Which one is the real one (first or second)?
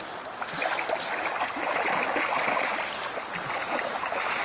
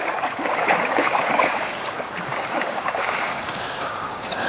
first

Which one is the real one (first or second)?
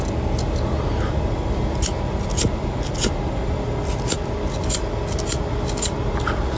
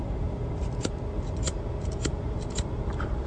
first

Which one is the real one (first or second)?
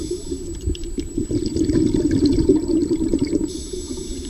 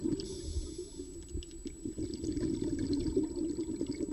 second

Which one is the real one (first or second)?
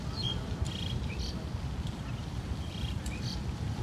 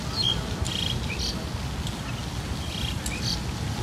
second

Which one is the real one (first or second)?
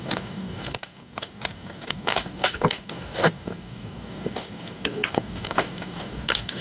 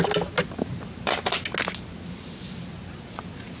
second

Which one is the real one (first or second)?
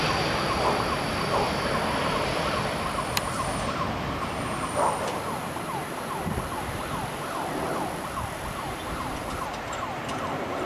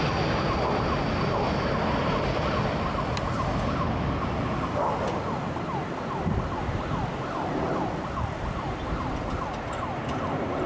second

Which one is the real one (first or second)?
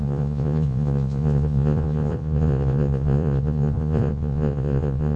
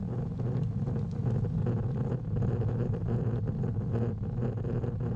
second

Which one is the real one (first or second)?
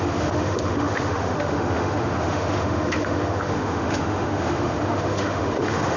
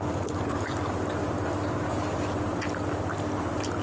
second